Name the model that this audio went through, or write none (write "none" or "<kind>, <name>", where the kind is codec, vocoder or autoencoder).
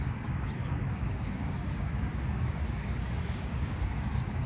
codec, DAC